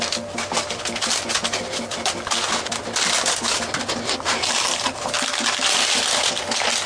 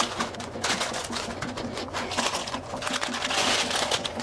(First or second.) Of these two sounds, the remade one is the second